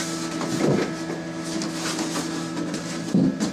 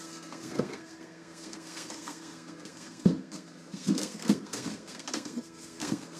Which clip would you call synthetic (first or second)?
second